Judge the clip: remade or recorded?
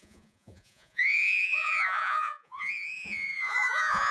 remade